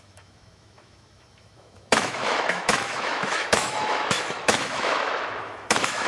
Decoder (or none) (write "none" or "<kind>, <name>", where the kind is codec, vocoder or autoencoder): autoencoder, DAC-VAE